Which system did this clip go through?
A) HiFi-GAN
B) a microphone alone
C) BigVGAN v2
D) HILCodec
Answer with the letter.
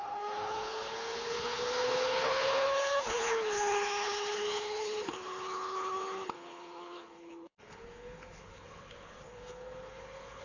D